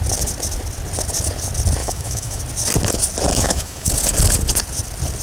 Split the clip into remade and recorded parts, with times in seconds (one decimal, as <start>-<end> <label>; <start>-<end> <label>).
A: 0.0-1.8 recorded; 1.8-2.4 remade; 2.4-3.3 recorded; 3.3-3.9 remade; 3.9-5.2 recorded